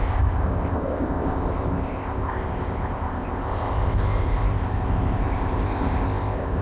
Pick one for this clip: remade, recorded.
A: remade